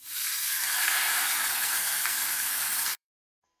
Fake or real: fake